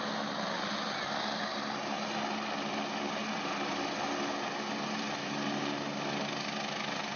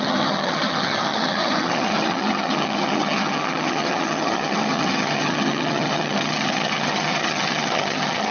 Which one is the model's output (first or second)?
second